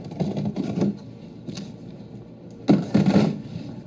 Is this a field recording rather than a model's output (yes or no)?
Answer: yes